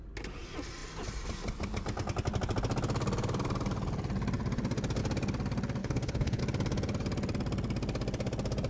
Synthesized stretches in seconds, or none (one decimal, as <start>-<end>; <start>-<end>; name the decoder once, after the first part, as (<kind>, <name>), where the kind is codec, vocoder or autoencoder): 5.8-6.4 (codec, HILCodec)